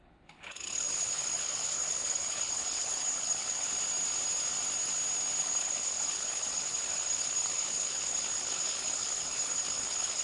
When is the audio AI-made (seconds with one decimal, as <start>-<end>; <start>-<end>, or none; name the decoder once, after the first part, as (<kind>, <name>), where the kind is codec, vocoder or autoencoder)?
0.0-3.7 (codec, HILCodec); 5.4-10.2